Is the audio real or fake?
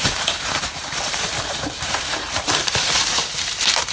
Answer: fake